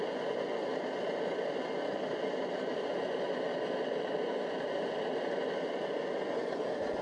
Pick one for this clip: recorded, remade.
recorded